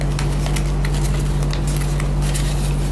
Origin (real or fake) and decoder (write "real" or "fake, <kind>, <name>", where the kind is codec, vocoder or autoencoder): real